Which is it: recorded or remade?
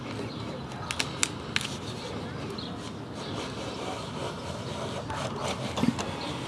recorded